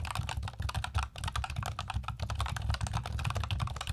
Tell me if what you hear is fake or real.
real